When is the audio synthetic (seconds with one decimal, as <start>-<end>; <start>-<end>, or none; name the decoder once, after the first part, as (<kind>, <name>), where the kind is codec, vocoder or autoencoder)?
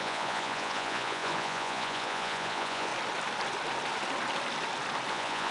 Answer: 0.0-2.9 (vocoder, Vocos); 5.1-5.5